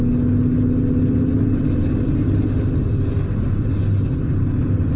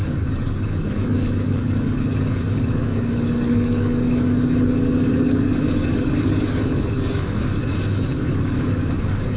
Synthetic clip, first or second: second